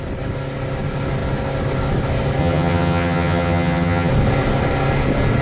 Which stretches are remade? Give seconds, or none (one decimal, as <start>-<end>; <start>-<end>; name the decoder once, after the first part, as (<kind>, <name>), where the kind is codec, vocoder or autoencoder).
2.4-4.1 (vocoder, HiFi-GAN)

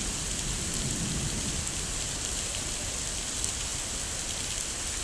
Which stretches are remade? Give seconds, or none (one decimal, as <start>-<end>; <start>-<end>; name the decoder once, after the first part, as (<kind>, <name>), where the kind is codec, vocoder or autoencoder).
none

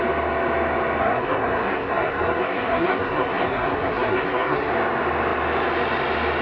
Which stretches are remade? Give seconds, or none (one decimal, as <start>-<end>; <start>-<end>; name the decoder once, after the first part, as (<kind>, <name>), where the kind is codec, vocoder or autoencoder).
1.0-4.7 (codec, SNAC)

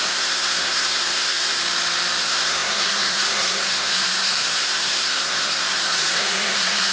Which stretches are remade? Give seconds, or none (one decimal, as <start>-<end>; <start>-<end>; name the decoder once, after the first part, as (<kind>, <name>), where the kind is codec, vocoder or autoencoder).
0.0-1.6 (codec, SNAC); 2.2-6.9